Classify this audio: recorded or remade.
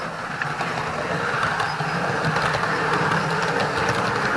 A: recorded